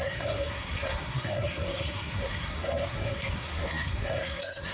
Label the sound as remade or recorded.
remade